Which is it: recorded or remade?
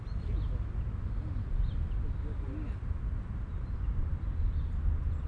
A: recorded